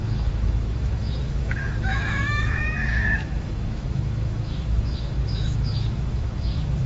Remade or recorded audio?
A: remade